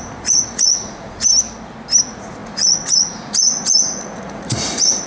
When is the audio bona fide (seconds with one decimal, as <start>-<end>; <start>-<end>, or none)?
1.3-2.0